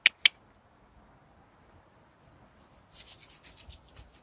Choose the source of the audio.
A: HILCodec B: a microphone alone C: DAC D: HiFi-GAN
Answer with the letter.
B